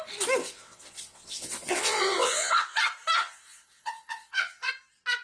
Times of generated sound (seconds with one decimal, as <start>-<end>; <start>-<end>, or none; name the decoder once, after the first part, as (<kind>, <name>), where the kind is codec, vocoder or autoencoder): 0.4-2.8 (vocoder, WaveNeXt); 3.2-4.7